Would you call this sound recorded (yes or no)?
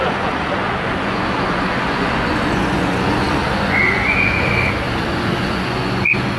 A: no